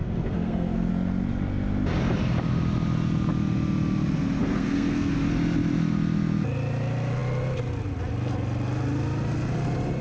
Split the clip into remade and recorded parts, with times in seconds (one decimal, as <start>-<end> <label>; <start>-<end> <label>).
0.0-0.9 remade; 0.9-4.4 recorded; 4.4-5.1 remade; 5.1-10.0 recorded